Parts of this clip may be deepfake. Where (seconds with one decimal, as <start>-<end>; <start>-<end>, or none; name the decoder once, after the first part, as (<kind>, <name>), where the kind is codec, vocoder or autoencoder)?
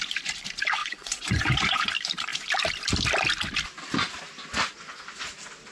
0.8-1.9 (vocoder, Vocos)